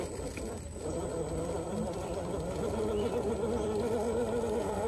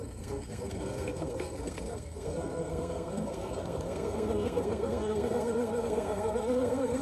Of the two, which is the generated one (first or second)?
second